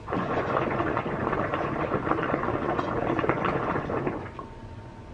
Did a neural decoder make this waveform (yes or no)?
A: yes